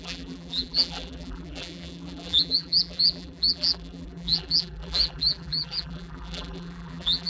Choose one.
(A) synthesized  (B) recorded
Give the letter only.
A